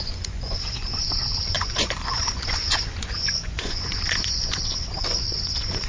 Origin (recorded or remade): remade